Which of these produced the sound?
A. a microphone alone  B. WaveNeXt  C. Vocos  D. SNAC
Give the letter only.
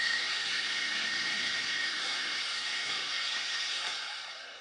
D